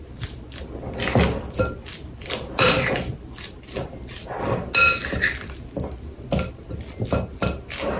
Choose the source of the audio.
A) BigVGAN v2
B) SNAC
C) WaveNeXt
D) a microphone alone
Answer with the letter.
D